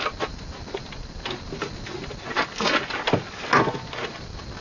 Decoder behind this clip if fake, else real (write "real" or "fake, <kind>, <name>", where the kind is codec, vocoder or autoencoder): real